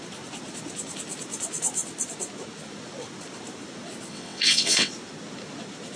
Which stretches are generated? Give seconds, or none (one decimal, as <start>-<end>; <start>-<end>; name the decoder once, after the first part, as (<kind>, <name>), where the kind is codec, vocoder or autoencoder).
4.1-4.9 (vocoder, WaveNeXt)